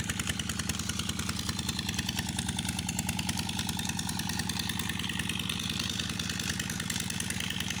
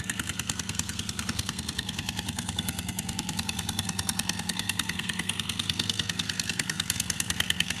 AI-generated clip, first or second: second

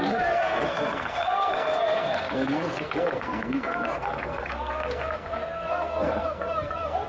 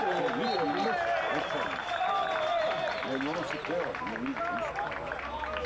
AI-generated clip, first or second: first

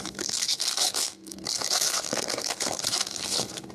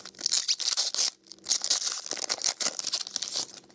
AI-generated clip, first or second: first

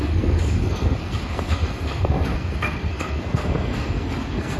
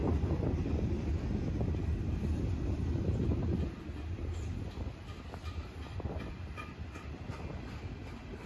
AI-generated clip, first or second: first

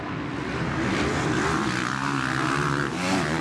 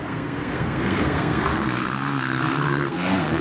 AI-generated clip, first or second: second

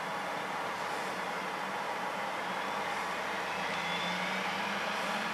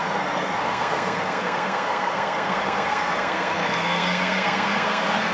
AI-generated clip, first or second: second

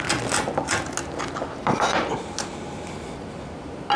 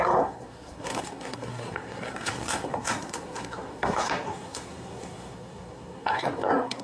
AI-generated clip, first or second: second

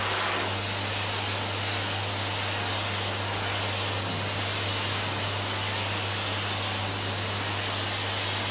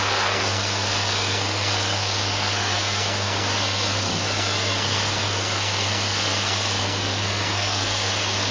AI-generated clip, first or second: second